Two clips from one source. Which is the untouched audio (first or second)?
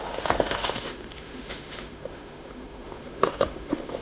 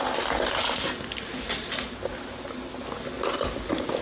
second